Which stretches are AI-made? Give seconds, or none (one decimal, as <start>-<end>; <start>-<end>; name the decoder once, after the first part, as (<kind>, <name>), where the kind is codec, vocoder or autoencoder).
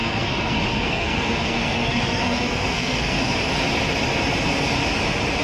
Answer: 0.0-3.2 (codec, SNAC)